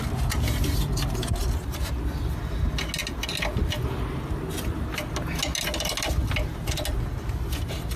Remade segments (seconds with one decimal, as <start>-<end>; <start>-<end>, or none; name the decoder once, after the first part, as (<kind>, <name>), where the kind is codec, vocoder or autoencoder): 1.4-2.0 (vocoder, BigVGAN v2)